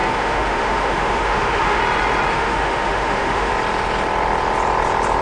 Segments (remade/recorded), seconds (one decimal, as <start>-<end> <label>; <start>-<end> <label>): 0.0-1.8 remade; 1.8-2.3 recorded; 2.3-3.5 remade; 3.5-5.2 recorded